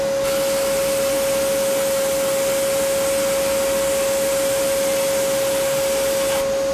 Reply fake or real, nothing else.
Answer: real